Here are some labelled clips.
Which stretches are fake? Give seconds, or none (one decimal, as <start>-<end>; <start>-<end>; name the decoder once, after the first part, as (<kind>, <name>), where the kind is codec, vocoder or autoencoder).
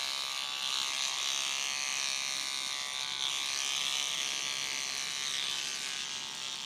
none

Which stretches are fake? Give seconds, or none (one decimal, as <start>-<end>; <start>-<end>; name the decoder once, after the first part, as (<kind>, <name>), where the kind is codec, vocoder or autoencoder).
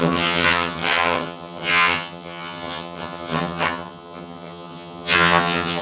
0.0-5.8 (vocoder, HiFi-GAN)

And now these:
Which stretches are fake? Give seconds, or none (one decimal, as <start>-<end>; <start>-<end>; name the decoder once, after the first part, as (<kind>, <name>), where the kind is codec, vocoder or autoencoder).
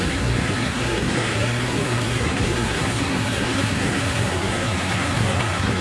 0.0-5.8 (codec, SNAC)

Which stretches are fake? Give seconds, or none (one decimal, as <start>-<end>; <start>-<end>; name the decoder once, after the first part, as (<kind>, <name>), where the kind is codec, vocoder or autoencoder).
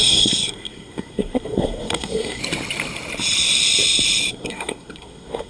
0.0-2.4 (codec, SNAC); 4.3-5.5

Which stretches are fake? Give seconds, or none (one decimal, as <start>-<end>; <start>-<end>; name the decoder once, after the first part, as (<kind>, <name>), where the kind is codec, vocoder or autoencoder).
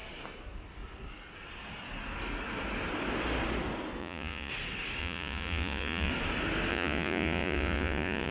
4.0-4.5 (vocoder, Vocos); 5.0-6.1; 6.7-8.3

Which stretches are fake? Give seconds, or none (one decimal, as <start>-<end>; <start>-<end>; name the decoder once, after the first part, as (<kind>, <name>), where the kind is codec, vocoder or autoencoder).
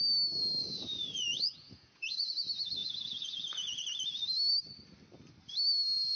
0.6-2.3 (vocoder, Vocos); 2.8-3.8